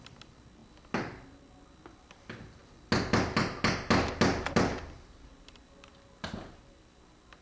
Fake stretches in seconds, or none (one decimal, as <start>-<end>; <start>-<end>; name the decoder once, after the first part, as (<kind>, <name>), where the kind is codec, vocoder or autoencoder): none